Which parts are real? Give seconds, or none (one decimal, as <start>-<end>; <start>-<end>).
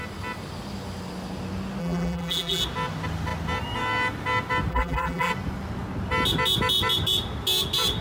0.0-1.8; 2.6-4.7; 5.3-8.0